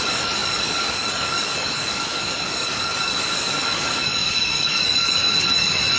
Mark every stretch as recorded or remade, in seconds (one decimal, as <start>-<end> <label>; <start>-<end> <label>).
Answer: 0.0-6.0 remade